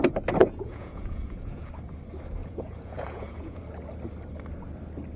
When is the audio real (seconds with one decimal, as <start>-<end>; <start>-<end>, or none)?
0.0-0.4; 1.7-2.4; 3.6-5.2